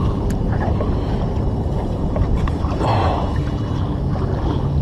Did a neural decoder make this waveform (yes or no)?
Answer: no